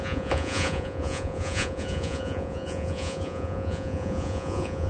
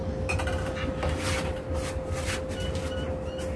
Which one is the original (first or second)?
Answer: second